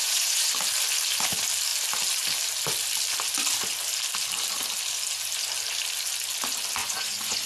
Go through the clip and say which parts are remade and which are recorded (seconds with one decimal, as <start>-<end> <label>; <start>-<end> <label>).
0.0-0.5 remade; 0.5-6.8 recorded; 6.8-7.5 remade